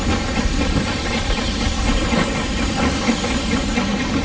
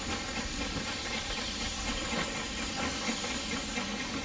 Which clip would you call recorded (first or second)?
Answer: second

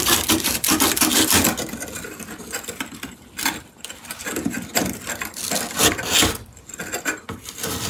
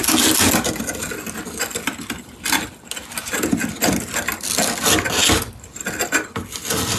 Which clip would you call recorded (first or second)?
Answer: second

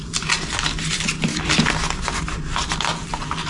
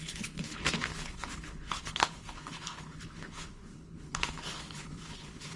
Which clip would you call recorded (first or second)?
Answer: first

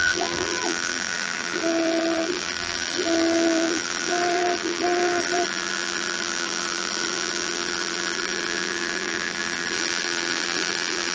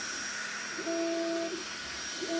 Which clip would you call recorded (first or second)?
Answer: second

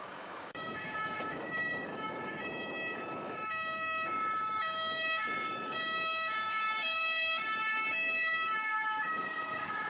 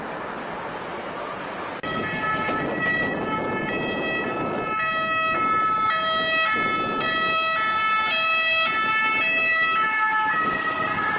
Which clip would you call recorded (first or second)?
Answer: second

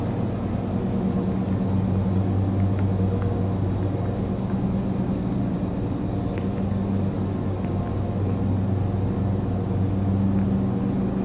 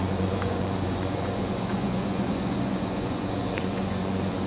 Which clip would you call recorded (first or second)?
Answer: first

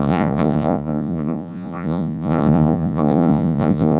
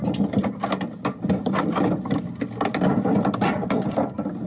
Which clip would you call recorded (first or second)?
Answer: second